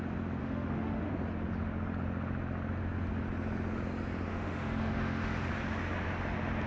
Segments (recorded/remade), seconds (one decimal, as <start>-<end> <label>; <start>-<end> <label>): 0.0-0.4 recorded; 0.4-1.1 remade; 1.1-4.3 recorded; 4.3-5.5 remade; 5.5-6.7 recorded